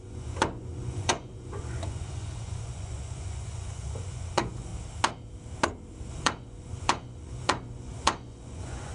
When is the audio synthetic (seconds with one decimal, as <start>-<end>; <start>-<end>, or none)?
0.0-4.7; 6.1-8.9